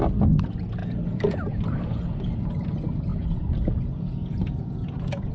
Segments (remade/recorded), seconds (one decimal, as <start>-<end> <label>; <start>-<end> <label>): 0.0-0.8 recorded; 0.8-1.6 remade; 1.6-3.1 recorded; 3.1-5.3 remade